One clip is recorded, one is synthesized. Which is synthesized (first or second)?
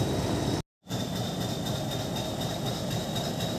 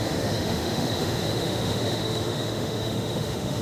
second